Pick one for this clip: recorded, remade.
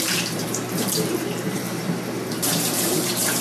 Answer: remade